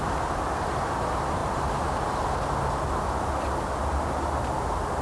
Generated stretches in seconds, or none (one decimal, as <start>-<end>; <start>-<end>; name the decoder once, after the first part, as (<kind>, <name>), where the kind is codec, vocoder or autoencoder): none